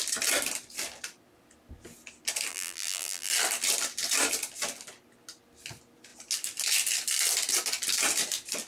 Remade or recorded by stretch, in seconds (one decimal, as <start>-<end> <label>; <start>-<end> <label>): 0.0-2.5 recorded; 2.5-3.3 remade; 3.3-8.7 recorded